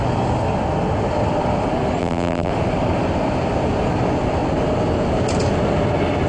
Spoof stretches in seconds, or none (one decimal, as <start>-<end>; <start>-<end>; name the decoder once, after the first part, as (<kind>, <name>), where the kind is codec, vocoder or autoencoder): 2.0-2.5 (vocoder, BigVGAN v2)